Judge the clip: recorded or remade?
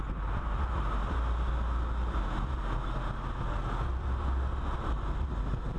recorded